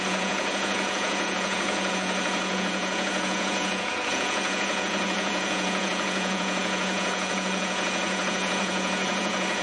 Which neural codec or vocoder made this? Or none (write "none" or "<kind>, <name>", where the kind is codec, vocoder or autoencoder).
vocoder, Vocos